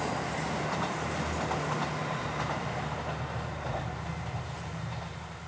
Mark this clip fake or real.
real